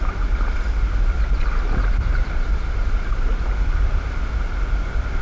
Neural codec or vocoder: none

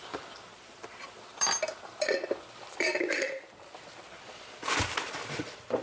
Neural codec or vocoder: vocoder, BigVGAN v2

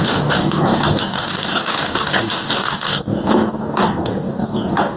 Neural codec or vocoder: codec, DAC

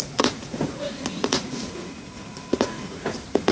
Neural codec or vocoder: vocoder, Vocos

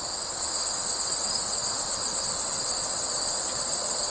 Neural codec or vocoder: none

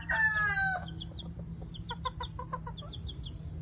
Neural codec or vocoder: none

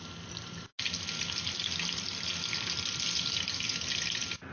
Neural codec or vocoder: none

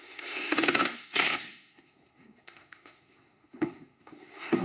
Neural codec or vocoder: codec, SNAC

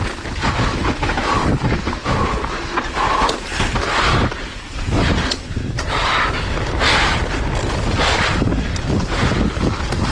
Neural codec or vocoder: none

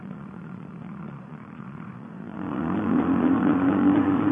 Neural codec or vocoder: vocoder, Vocos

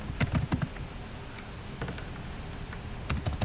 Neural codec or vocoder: none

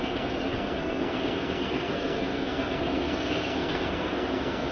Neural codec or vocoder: codec, SNAC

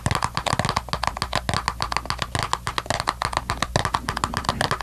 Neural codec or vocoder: none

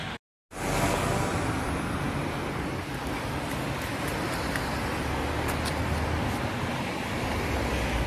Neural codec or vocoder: none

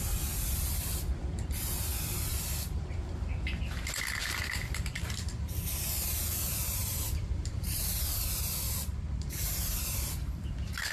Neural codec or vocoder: vocoder, BigVGAN v2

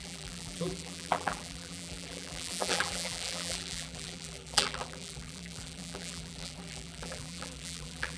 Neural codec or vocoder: vocoder, BigVGAN v2